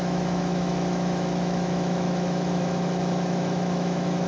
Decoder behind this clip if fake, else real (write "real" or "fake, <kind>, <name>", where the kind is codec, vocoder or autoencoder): fake, autoencoder, DAC-VAE